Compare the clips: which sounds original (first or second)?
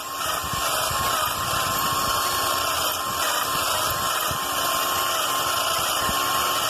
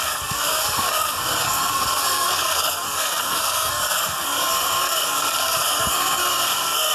first